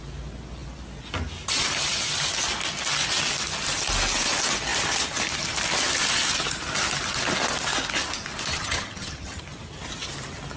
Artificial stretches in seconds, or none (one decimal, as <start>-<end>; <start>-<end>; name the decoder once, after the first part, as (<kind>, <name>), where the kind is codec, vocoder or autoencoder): 8.5-9.4 (vocoder, HiFi-GAN)